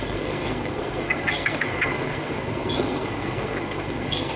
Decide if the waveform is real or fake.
fake